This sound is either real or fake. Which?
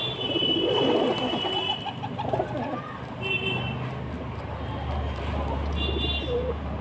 real